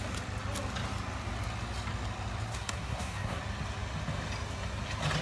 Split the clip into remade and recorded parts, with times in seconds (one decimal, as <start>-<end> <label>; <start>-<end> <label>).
0.0-2.5 recorded; 2.5-3.4 remade; 3.4-5.2 recorded